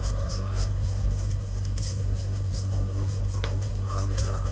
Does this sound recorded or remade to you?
remade